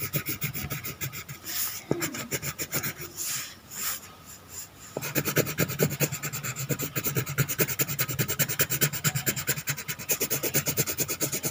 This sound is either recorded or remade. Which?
remade